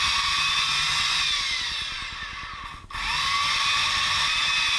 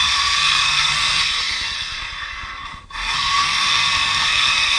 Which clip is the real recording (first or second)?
first